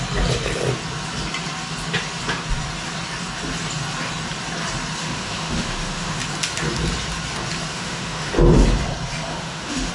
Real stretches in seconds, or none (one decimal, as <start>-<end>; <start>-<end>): 0.0-5.0; 6.2-7.7; 8.3-9.3